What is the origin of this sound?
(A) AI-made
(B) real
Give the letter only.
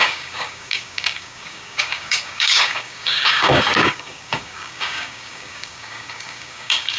A